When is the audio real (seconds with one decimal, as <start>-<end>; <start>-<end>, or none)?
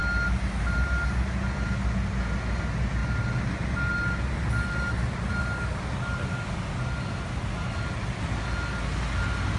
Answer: 0.0-9.6